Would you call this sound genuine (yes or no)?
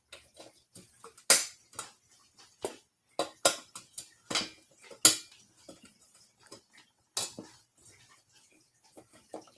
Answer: yes